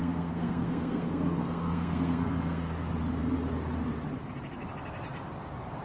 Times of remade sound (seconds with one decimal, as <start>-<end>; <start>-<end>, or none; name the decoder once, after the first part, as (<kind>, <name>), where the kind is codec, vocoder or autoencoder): 0.0-2.7 (codec, SNAC)